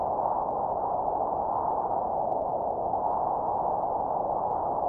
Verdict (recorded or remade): recorded